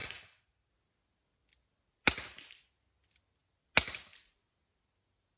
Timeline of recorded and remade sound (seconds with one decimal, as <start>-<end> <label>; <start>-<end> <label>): 0.0-0.7 remade; 0.7-5.4 recorded